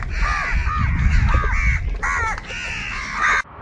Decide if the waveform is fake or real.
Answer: real